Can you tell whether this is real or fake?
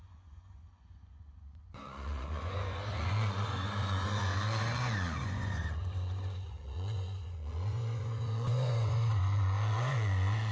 fake